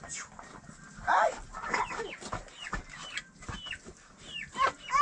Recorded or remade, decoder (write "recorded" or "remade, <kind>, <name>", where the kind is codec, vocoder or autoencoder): recorded